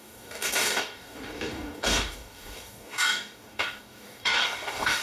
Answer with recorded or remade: remade